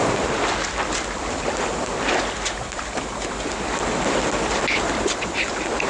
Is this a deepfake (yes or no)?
no